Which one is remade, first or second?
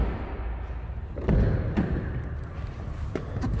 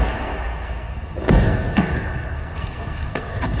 second